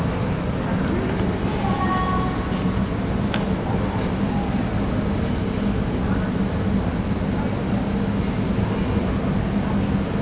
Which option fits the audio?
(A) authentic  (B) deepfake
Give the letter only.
A